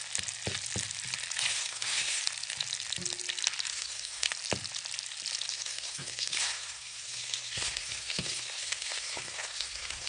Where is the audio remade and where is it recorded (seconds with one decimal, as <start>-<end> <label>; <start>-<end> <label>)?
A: 0.0-1.5 recorded; 1.5-2.2 remade; 2.2-3.7 recorded; 3.7-4.3 remade; 4.3-5.5 recorded; 5.5-10.1 remade